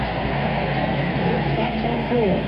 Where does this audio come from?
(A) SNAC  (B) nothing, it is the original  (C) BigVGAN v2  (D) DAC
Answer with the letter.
A